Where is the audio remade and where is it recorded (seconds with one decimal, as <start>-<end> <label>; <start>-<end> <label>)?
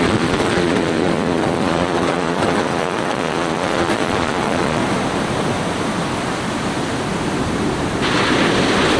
0.0-4.8 remade; 4.8-9.0 recorded